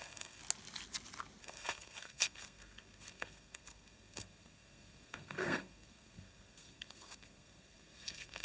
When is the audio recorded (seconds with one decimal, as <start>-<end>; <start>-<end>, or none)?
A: 0.4-1.4